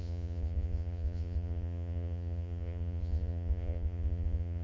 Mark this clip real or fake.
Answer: fake